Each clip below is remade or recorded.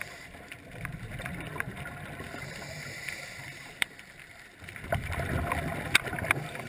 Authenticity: remade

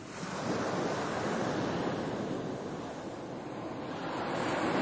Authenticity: recorded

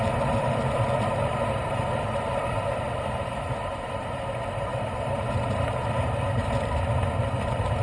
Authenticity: remade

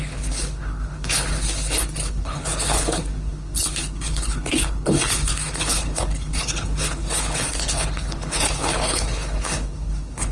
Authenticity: remade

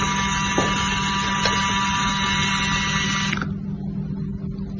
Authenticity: recorded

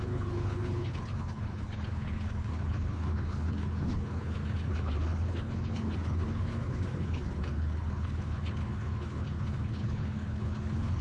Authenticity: remade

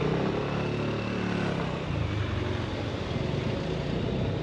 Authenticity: recorded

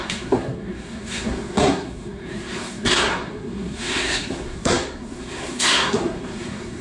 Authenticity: remade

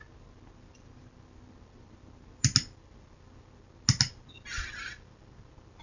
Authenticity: recorded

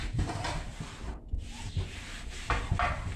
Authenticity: recorded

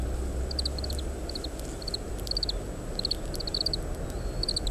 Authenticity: recorded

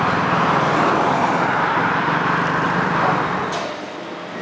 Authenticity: recorded